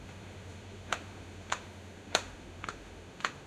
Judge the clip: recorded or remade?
remade